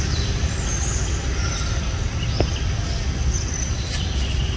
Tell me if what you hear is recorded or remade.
recorded